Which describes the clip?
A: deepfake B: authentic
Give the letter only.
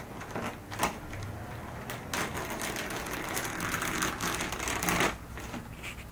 B